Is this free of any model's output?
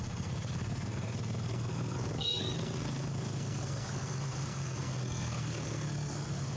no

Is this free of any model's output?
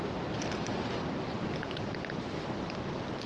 yes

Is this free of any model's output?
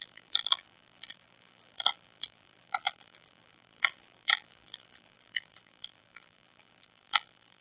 no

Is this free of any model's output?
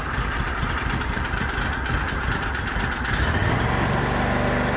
no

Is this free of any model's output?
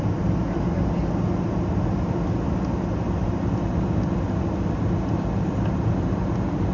yes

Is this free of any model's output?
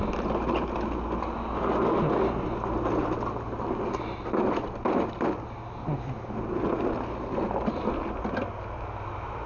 yes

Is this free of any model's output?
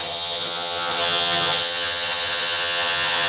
no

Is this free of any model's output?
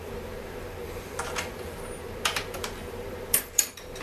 no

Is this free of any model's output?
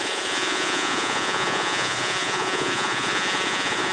no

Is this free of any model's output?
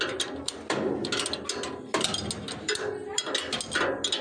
yes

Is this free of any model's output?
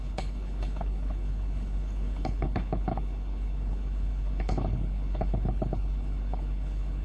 no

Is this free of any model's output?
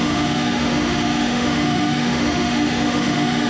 no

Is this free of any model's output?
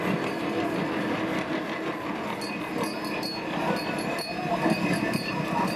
yes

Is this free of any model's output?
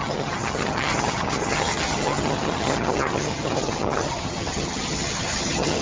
no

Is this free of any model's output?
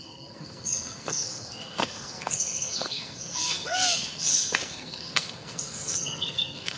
no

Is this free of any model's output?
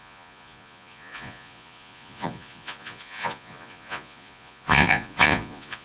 no